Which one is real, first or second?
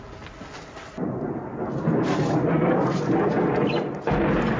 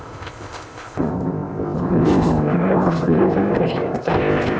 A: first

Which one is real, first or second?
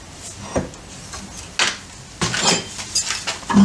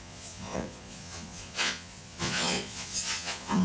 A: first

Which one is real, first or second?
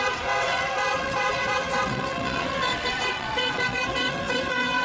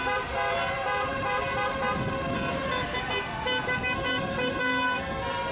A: second